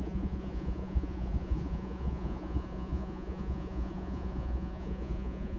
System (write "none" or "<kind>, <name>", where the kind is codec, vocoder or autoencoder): vocoder, Vocos